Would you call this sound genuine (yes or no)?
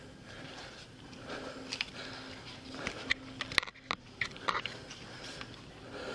yes